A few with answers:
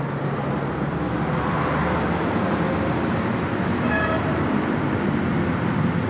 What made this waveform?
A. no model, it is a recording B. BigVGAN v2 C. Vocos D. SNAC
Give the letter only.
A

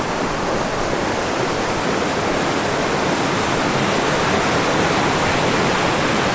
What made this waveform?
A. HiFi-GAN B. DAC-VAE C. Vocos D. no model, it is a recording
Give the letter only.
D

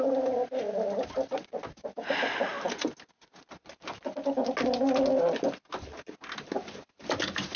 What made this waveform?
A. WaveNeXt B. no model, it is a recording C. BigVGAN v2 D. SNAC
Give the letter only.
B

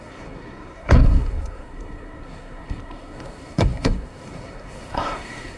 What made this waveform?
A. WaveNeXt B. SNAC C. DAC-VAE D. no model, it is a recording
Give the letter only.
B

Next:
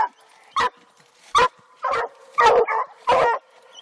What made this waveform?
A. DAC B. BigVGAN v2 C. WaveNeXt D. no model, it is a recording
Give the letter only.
B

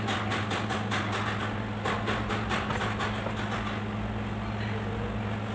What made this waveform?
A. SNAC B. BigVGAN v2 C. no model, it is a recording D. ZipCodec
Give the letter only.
C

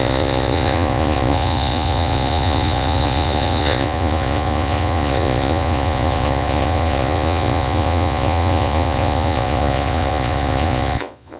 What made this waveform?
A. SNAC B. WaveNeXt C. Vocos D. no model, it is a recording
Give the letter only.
C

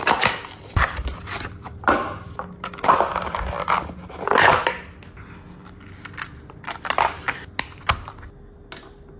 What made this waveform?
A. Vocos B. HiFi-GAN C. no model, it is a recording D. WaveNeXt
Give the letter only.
C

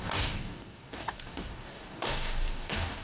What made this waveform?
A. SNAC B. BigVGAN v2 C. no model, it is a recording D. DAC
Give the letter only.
D